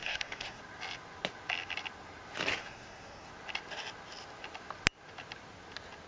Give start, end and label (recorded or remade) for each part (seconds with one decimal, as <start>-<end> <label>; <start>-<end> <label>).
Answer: 0.0-0.6 remade; 0.6-2.5 recorded; 2.5-3.3 remade; 3.3-6.1 recorded